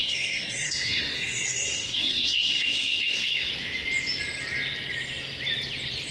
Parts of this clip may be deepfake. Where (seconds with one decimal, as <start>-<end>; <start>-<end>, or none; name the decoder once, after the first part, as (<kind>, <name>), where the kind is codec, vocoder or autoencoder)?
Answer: 0.0-3.5 (codec, SNAC)